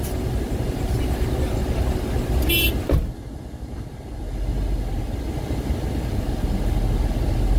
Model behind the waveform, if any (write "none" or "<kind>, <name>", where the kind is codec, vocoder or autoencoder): none